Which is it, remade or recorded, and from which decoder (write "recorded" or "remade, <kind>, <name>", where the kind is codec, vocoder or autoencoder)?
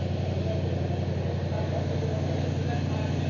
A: recorded